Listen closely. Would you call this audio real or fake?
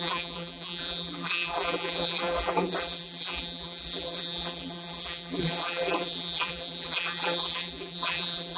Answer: fake